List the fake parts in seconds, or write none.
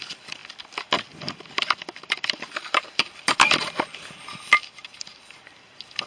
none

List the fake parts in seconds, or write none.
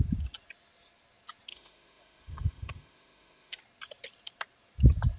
1.5-3.6 (autoencoder, DAC-VAE)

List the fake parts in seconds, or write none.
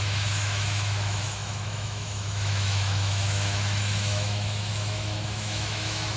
0.0-6.2 (autoencoder, DAC-VAE)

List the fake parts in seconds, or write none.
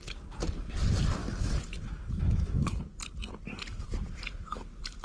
1.2-2.8 (autoencoder, DAC-VAE)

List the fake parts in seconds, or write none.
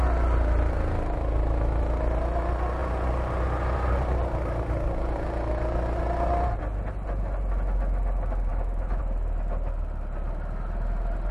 8.5-9.0 (autoencoder, DAC-VAE)